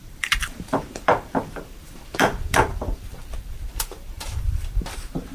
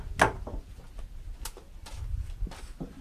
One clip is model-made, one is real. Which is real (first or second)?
second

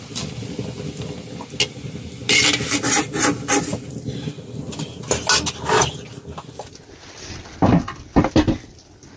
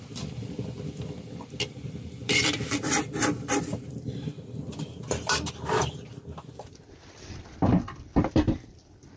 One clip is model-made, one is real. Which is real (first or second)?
first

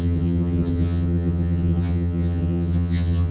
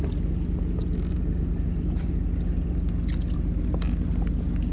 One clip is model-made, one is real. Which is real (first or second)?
second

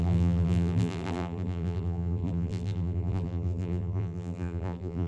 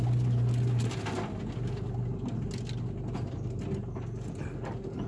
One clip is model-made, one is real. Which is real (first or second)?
second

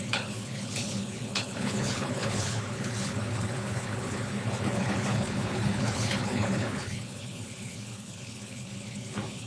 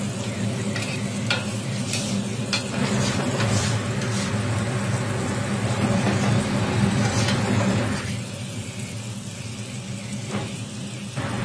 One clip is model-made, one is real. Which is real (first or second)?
second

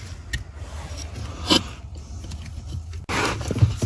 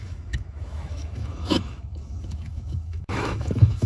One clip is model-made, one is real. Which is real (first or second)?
first